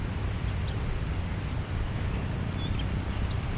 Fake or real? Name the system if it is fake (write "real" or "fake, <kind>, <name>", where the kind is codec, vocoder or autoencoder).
real